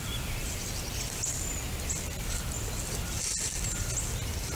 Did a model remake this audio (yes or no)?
no